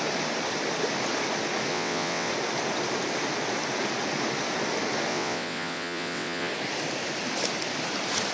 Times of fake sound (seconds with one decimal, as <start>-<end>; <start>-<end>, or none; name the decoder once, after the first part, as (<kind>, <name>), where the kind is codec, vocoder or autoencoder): 1.7-2.3 (vocoder, WaveNeXt); 5.1-6.5

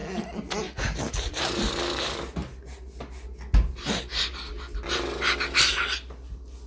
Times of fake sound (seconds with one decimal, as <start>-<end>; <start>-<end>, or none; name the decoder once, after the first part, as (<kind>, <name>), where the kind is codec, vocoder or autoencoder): none

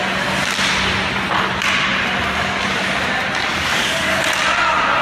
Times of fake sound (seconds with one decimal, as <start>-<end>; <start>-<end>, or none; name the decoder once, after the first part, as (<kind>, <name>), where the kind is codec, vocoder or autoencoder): 3.5-4.2 (codec, DAC)

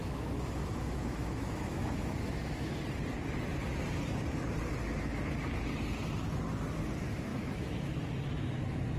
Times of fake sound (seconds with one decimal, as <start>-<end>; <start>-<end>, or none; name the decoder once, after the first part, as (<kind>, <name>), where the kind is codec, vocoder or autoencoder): 0.0-2.7 (autoencoder, DAC-VAE); 7.3-8.1

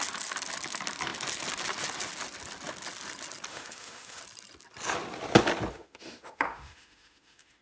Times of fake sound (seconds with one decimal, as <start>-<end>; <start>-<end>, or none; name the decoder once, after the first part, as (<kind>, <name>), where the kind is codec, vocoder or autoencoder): 3.5-4.2 (autoencoder, DAC-VAE); 5.7-7.6

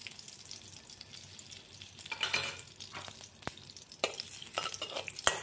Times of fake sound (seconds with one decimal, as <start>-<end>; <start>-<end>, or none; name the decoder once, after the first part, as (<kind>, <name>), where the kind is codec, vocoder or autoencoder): none

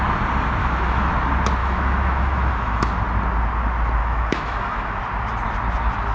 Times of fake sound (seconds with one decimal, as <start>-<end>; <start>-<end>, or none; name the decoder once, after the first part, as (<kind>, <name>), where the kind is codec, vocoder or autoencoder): 0.6-1.1 (autoencoder, DAC-VAE); 1.6-2.9; 4.0-5.0